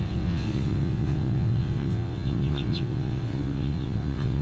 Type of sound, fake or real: fake